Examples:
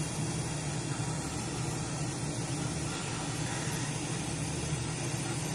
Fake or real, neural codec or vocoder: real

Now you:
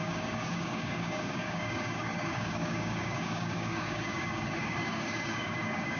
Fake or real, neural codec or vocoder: fake, codec, DAC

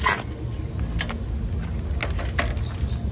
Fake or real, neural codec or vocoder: real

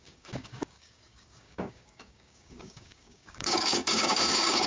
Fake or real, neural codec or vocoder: fake, codec, DAC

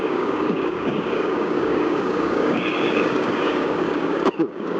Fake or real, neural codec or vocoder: fake, codec, DAC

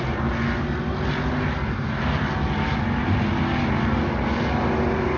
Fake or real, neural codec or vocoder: real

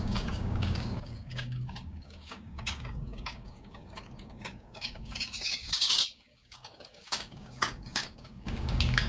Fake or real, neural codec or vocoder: fake, codec, DAC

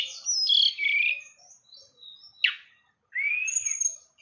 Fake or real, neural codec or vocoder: real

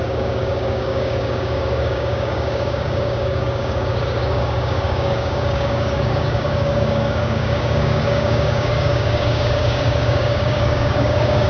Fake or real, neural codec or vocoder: fake, codec, DAC